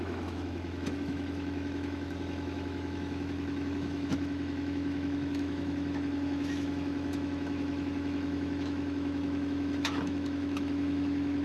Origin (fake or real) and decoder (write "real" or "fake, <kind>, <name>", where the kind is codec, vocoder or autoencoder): fake, autoencoder, DAC-VAE